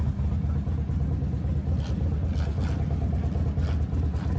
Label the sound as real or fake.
real